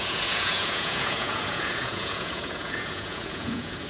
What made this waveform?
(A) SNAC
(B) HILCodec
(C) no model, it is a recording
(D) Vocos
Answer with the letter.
D